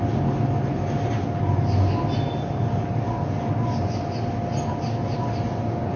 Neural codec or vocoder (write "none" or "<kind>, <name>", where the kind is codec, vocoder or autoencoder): none